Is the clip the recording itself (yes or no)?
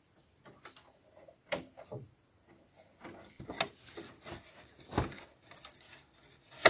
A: yes